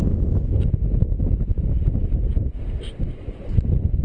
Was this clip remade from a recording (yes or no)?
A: no